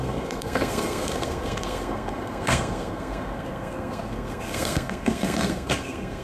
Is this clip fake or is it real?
fake